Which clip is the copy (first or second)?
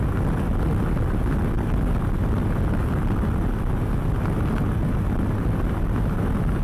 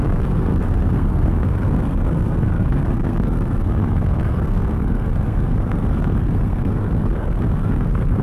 second